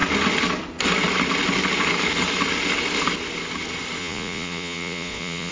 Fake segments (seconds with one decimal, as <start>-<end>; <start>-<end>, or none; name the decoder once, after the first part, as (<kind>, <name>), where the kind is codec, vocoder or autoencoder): 4.0-5.5 (vocoder, Vocos)